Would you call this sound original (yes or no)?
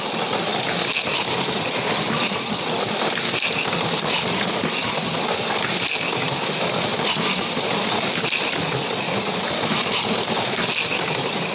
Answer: yes